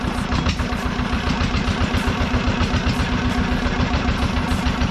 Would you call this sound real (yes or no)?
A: yes